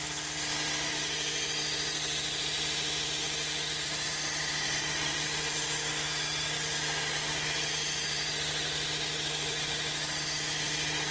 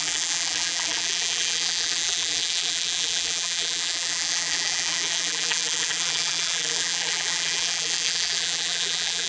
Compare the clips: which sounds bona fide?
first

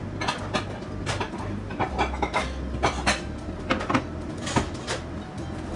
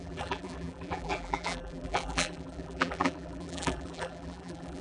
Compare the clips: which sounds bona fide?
first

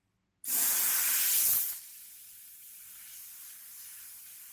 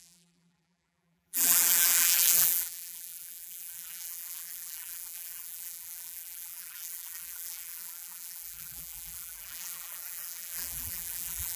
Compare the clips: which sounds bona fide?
first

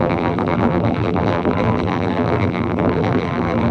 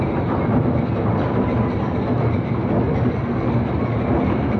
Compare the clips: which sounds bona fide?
second